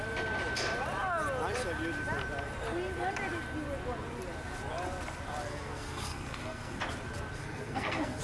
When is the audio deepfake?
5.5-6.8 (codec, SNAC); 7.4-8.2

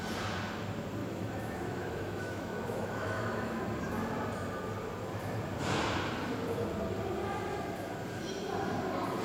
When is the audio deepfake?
1.0-3.6 (autoencoder, DAC-VAE)

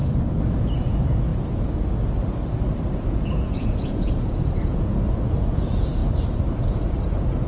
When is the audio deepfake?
0.6-1.3 (vocoder, Vocos); 3.0-6.0

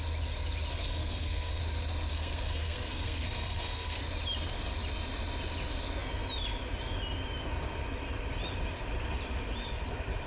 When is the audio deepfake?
0.7-1.6 (codec, SNAC); 2.1-4.0